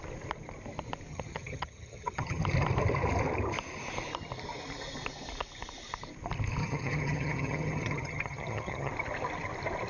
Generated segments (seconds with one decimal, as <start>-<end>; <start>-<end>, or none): 1.1-2.4; 6.6-8.9